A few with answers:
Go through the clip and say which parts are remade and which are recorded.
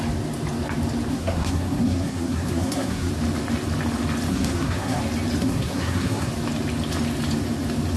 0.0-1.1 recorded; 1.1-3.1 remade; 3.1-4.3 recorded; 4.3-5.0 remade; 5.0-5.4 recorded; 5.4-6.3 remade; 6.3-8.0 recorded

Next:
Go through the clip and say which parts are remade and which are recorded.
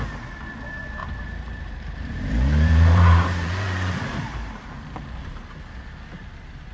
0.0-1.0 recorded; 1.0-5.0 remade; 5.0-6.7 recorded